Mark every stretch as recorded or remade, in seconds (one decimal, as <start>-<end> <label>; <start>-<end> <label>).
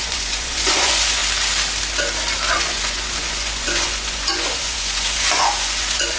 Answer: 0.0-1.2 remade; 1.2-2.5 recorded; 2.5-6.2 remade